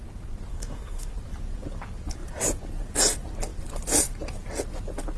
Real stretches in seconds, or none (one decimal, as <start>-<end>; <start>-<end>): 0.0-0.5; 1.1-5.2